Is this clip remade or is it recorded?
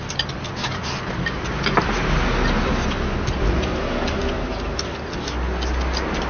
recorded